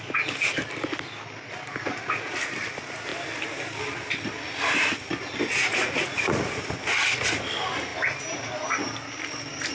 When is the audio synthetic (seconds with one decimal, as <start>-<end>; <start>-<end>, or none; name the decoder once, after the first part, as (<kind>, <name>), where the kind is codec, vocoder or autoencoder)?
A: 5.7-6.6 (vocoder, Vocos)